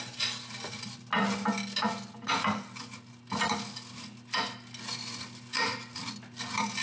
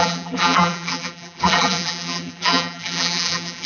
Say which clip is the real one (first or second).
first